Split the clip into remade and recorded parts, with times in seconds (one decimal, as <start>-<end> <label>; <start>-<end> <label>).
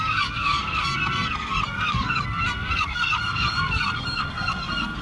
0.0-5.0 remade